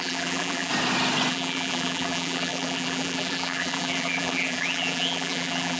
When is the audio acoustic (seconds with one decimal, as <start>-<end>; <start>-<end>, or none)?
0.7-1.3